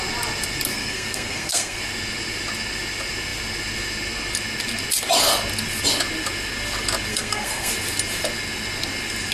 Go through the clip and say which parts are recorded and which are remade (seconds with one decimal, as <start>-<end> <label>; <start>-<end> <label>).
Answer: 0.0-0.7 recorded; 0.7-1.8 remade; 1.8-7.1 recorded; 7.1-7.7 remade; 7.7-9.3 recorded